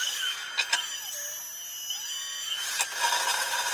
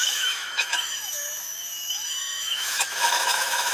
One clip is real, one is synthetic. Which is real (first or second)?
first